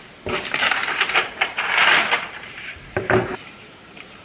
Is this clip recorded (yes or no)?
no